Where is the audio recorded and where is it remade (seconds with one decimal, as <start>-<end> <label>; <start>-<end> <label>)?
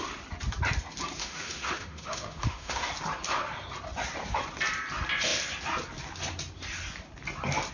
0.0-1.2 recorded; 1.2-2.9 remade; 2.9-7.7 recorded